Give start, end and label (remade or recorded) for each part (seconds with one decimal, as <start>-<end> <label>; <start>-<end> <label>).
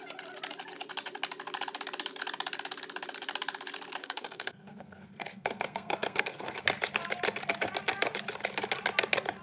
0.0-4.0 recorded; 4.0-6.6 remade; 6.6-9.4 recorded